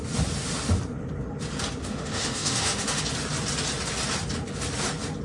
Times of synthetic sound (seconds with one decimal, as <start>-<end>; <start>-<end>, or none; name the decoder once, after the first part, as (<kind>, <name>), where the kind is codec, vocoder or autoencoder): 1.8-3.0 (autoencoder, DAC-VAE)